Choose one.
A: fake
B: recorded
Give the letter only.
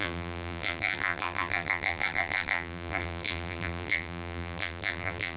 A